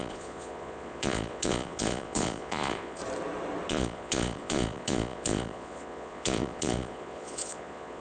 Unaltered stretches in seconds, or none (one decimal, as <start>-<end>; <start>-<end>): 3.0-3.7